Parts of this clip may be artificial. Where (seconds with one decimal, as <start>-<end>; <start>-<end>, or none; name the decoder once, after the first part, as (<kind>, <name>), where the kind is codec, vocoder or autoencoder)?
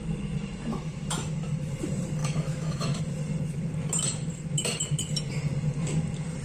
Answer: 0.7-1.7 (autoencoder, DAC-VAE); 2.2-3.0